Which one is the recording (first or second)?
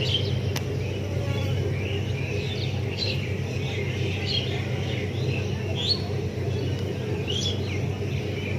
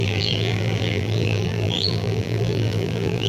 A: first